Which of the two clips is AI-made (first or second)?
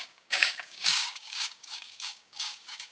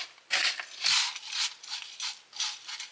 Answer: first